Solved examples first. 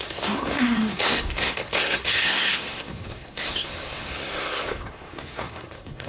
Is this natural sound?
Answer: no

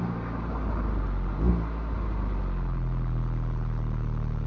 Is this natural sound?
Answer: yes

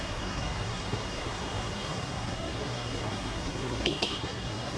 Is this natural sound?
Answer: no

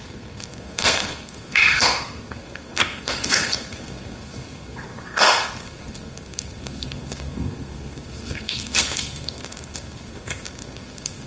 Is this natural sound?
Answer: no